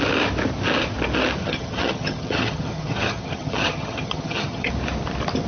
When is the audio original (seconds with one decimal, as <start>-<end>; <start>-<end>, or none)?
0.0-1.4; 4.7-5.5